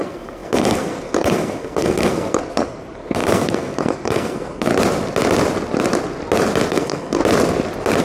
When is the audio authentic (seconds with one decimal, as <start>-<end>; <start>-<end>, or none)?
4.7-6.7; 7.2-8.0